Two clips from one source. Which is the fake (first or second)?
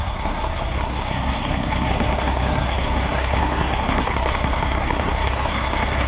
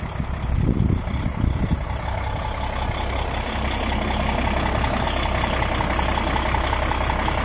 first